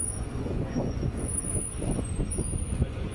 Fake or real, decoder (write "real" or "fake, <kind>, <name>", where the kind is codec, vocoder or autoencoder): fake, vocoder, Vocos